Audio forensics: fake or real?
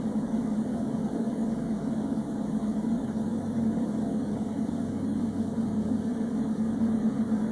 fake